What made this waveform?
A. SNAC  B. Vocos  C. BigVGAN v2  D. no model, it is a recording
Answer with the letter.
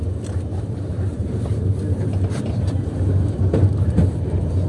C